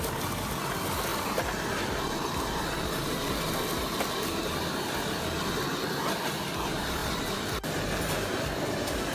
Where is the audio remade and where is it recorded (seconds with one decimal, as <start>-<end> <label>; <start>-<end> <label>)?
0.0-9.1 recorded